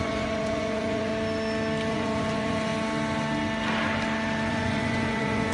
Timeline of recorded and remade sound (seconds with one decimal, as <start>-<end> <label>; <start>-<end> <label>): 0.0-1.1 remade; 1.1-1.9 recorded; 1.9-2.7 remade; 2.7-4.5 recorded; 4.5-5.5 remade